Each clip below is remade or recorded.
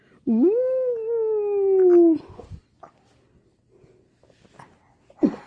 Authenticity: recorded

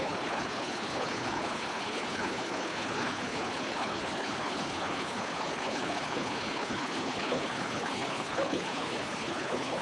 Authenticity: remade